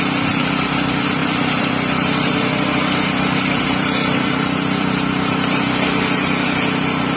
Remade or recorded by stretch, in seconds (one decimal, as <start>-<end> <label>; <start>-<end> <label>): 0.0-1.2 recorded; 1.2-5.5 remade; 5.5-7.2 recorded